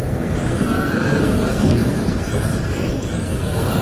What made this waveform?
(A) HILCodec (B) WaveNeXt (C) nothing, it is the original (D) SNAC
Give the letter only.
D